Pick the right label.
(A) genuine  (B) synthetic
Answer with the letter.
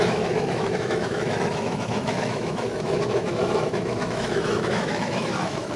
B